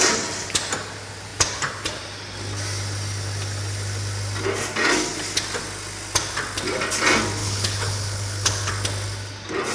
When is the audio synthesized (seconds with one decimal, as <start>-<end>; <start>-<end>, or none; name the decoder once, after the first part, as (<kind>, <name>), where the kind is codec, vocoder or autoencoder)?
7.4-8.7 (codec, HILCodec)